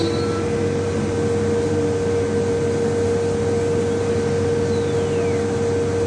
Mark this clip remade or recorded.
recorded